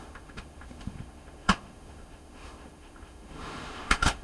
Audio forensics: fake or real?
fake